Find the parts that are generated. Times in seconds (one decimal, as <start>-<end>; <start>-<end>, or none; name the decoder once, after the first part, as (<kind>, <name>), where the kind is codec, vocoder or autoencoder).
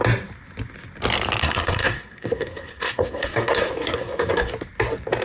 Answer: 1.4-4.5 (codec, SNAC)